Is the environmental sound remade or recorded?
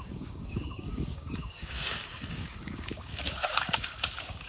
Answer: remade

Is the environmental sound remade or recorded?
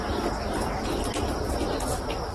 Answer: recorded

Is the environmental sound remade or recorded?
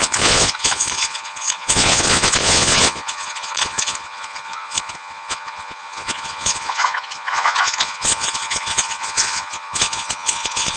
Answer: remade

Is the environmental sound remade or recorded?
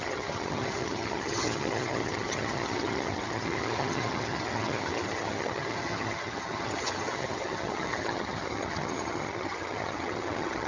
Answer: remade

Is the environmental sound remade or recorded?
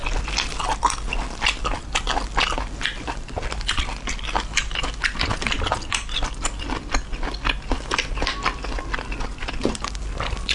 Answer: recorded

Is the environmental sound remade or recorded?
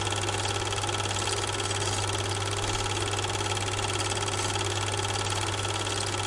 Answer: recorded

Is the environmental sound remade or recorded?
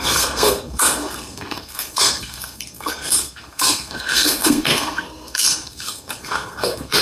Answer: remade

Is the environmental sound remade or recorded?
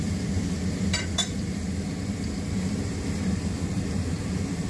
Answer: remade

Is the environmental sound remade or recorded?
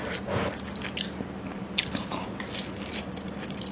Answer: recorded